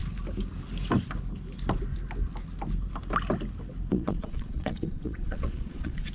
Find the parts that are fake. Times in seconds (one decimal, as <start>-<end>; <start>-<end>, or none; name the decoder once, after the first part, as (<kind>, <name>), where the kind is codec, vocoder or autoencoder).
3.9-6.1 (vocoder, Vocos)

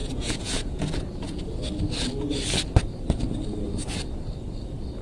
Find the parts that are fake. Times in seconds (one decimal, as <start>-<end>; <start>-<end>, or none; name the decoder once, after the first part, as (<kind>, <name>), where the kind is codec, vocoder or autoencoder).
0.0-1.4 (vocoder, Vocos)

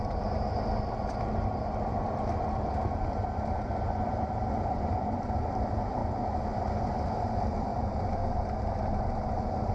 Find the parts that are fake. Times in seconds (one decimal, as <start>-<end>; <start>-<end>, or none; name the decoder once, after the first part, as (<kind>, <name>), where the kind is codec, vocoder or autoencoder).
0.0-6.0 (vocoder, BigVGAN v2); 6.8-9.7